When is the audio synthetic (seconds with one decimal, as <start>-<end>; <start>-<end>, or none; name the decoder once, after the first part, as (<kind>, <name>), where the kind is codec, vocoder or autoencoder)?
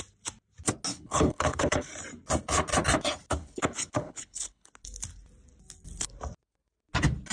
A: 0.9-1.9 (codec, HILCodec); 3.4-4.7